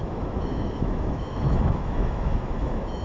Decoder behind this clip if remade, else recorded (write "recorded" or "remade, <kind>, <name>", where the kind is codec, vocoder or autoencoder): remade, autoencoder, DAC-VAE